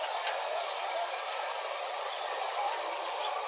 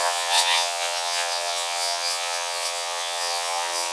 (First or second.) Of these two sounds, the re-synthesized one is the second